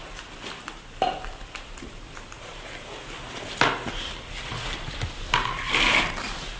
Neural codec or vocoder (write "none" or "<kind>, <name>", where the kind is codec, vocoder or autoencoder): none